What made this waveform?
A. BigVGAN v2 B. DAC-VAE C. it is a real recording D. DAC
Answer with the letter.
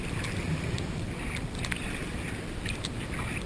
C